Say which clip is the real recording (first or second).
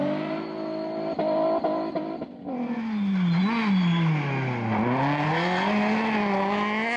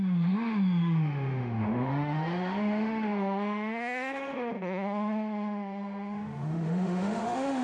first